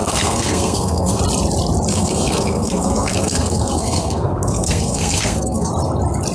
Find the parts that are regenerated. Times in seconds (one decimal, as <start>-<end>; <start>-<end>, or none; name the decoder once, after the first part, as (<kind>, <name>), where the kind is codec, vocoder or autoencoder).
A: 0.0-1.2 (codec, SNAC); 1.9-5.7